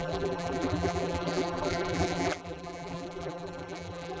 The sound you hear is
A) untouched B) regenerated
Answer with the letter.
B